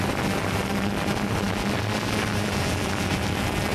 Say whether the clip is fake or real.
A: real